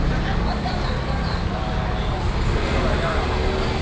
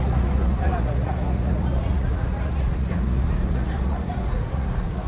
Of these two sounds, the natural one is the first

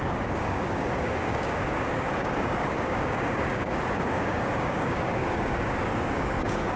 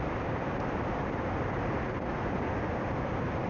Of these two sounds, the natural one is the second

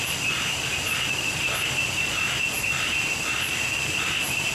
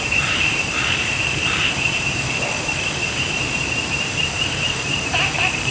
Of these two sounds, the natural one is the first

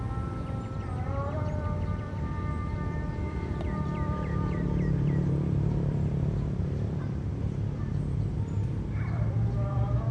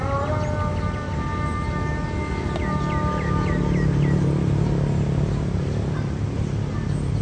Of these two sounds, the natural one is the second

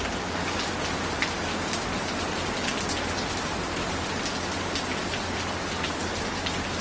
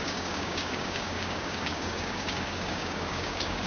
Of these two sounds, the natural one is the first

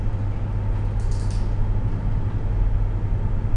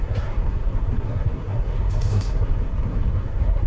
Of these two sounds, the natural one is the first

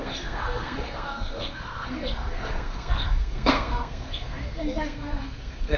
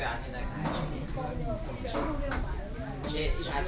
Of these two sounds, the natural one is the second